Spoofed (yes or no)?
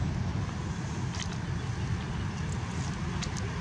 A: no